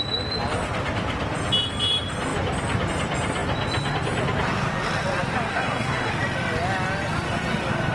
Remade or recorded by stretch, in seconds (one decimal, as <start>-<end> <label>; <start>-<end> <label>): 0.0-5.5 recorded; 5.5-6.1 remade; 6.1-7.9 recorded